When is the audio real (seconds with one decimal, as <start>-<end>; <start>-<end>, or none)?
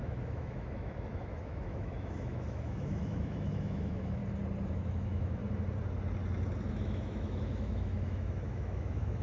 4.2-4.7; 5.4-6.7